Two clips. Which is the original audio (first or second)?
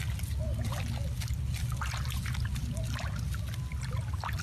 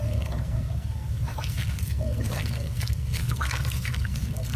first